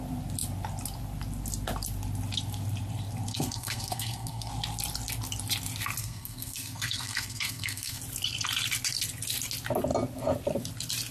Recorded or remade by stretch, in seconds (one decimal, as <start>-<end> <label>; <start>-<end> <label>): 0.0-3.3 recorded; 3.3-4.5 remade; 4.5-6.0 recorded; 6.0-8.0 remade; 8.0-11.1 recorded